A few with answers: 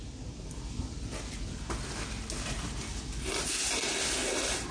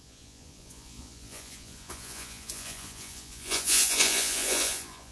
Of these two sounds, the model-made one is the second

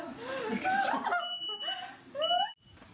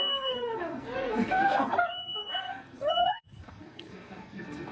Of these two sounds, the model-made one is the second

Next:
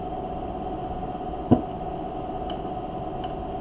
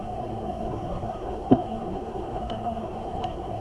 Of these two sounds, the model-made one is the second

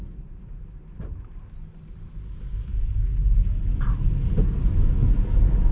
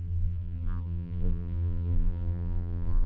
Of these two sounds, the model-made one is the second